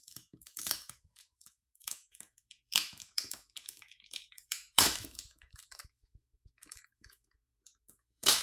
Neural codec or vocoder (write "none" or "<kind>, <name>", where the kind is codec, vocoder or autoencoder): autoencoder, DAC-VAE